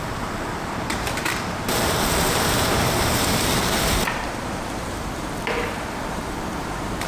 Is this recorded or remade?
remade